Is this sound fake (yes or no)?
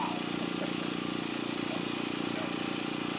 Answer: no